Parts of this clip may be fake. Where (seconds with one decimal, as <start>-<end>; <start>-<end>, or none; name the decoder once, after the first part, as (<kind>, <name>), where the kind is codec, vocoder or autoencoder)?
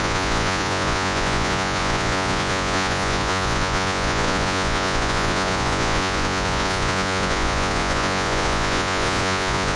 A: 0.0-9.8 (vocoder, Vocos)